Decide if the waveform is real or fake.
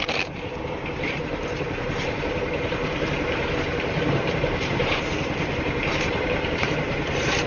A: fake